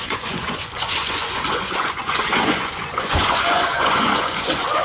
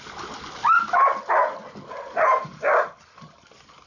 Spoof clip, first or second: first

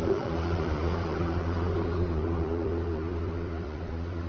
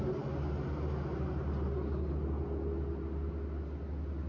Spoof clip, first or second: first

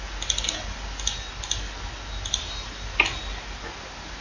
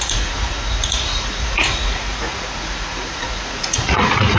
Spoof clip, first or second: second